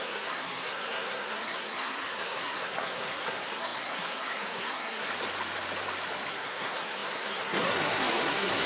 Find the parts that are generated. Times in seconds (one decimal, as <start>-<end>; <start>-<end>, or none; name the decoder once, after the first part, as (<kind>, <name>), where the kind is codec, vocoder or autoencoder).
0.0-5.1 (codec, SNAC); 6.3-8.7